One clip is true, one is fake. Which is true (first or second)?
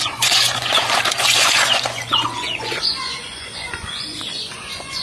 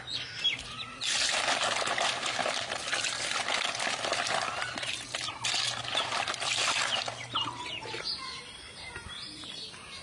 second